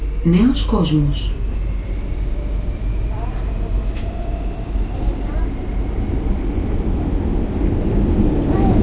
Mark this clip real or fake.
real